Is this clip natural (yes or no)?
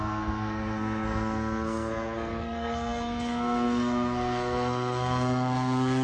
no